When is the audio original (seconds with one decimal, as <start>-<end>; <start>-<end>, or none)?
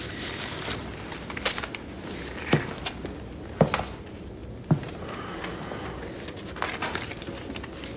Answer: 0.0-8.0